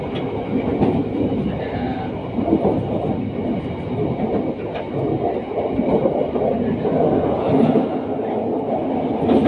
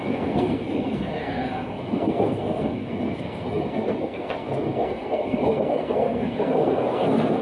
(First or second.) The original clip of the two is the first